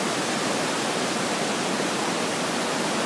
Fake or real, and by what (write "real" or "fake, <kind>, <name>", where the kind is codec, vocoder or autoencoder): real